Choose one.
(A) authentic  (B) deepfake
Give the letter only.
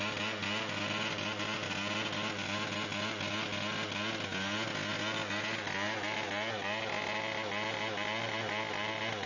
A